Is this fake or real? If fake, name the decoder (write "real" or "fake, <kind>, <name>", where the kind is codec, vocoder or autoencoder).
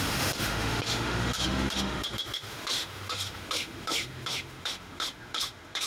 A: fake, autoencoder, DAC-VAE